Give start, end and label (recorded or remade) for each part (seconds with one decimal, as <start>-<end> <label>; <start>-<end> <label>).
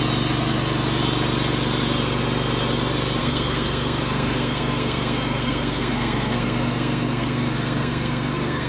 0.0-3.2 recorded; 3.2-8.7 remade